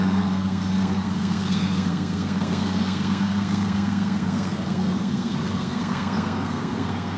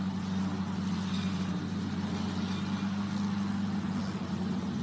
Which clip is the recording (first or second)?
second